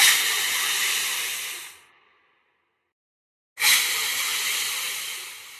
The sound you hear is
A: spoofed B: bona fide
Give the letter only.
B